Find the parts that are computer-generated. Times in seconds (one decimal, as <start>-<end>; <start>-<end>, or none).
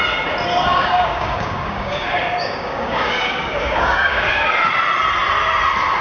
0.7-4.3